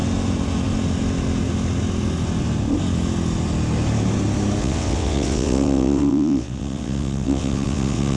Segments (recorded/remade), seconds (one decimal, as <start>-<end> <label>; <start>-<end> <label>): 0.0-4.6 recorded; 4.6-8.2 remade